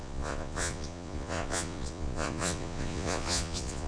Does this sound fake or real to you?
fake